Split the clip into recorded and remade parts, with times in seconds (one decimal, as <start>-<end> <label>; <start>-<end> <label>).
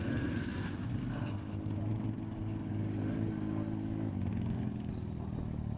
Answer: 0.0-4.3 recorded; 4.3-4.9 remade; 4.9-5.8 recorded